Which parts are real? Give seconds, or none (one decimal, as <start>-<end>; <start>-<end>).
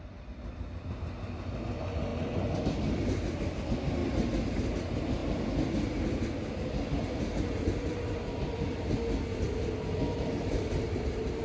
0.0-11.4